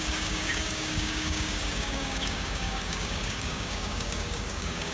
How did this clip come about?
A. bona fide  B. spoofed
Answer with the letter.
B